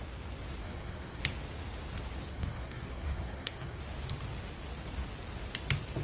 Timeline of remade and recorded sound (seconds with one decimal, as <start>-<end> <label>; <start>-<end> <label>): 0.0-0.6 recorded; 0.6-1.2 remade; 1.2-2.3 recorded; 2.3-3.8 remade; 3.8-6.0 recorded